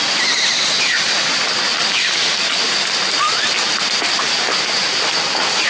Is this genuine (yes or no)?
yes